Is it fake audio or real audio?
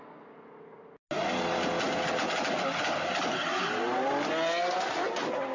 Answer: real